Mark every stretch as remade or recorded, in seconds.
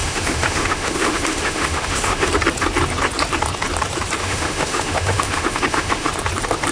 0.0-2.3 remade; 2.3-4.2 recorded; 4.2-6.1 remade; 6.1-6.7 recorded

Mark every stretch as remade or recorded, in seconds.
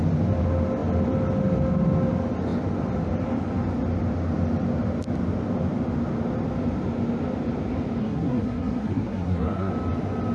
0.0-8.0 recorded; 8.0-9.7 remade; 9.7-10.3 recorded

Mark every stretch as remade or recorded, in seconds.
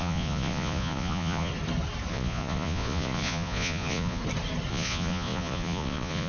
0.0-1.5 remade; 1.5-2.1 recorded; 2.1-4.2 remade; 4.2-4.7 recorded; 4.7-6.3 remade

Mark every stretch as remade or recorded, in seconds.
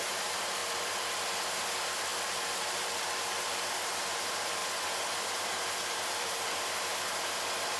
0.0-0.6 remade; 0.6-1.6 recorded; 1.6-2.1 remade; 2.1-2.6 recorded; 2.6-4.6 remade; 4.6-5.4 recorded; 5.4-6.9 remade; 6.9-7.8 recorded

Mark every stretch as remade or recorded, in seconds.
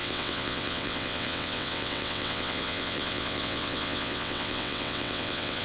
0.0-5.6 remade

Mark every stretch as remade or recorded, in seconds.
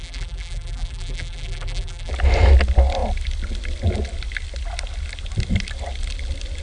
0.0-2.1 remade; 2.1-6.6 recorded